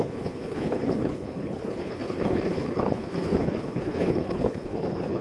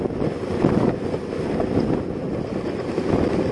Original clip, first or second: second